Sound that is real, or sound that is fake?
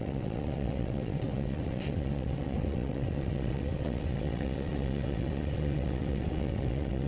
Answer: fake